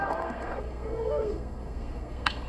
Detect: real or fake fake